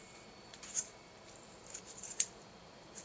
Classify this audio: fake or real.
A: fake